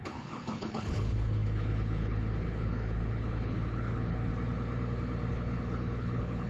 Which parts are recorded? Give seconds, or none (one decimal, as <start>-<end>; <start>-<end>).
4.3-5.3